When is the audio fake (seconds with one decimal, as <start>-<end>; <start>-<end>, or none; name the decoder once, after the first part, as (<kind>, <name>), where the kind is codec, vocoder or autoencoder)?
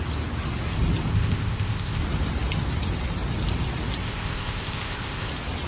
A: 1.1-2.0 (codec, ZipCodec); 4.0-5.3